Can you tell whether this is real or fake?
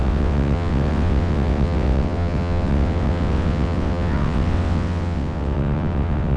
fake